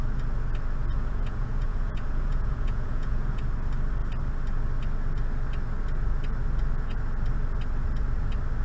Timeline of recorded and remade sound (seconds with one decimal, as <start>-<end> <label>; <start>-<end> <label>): 0.0-0.8 recorded; 0.8-3.4 remade; 3.4-8.6 recorded